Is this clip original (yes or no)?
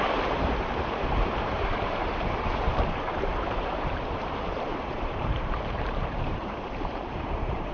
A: no